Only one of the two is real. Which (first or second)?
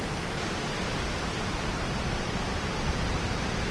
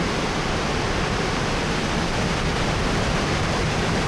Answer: second